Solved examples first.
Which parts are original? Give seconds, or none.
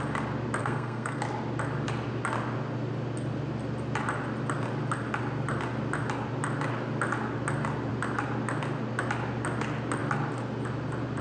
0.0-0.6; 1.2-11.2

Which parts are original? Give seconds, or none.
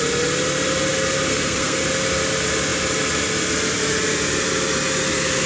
0.0-1.3; 1.8-5.5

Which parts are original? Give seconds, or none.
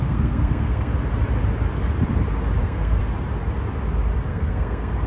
0.9-2.6; 3.0-4.3